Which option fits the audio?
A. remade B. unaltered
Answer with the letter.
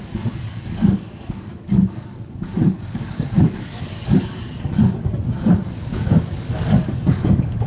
A